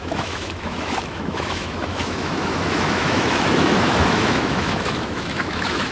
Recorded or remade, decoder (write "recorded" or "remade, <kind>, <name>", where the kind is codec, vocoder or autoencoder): remade, autoencoder, DAC-VAE